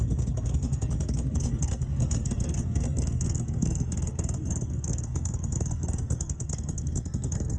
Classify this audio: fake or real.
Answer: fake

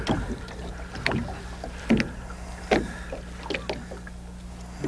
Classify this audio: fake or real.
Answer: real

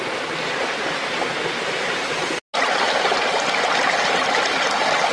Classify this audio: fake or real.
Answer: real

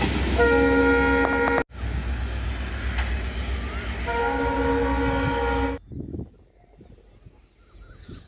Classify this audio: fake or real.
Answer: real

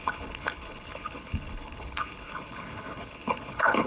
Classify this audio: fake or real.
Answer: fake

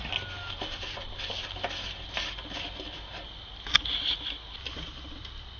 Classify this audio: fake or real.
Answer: real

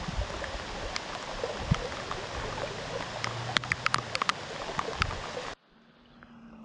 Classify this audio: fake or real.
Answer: real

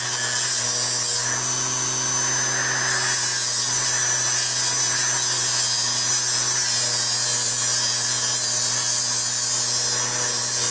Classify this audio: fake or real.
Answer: real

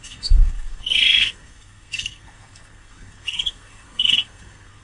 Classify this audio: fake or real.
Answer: fake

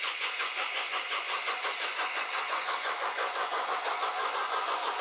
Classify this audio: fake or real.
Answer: fake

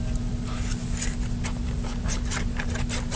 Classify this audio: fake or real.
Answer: real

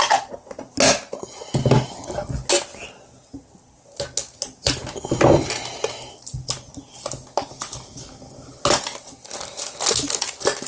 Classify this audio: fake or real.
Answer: real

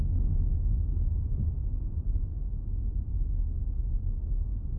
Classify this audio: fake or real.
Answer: fake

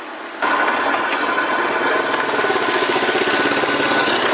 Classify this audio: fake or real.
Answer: real